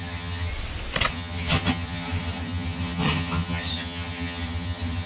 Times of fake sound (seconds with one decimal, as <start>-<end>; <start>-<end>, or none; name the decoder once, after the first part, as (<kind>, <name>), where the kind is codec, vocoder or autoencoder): 0.0-0.5 (vocoder, HiFi-GAN); 1.1-5.1